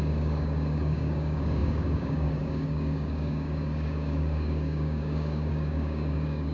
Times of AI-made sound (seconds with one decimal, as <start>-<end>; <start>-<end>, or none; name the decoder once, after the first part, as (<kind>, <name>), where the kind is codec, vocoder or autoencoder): 0.0-6.5 (codec, DAC)